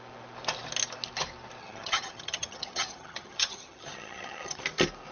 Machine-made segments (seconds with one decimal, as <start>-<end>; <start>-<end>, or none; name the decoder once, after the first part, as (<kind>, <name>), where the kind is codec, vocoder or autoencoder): 1.6-4.6 (vocoder, HiFi-GAN)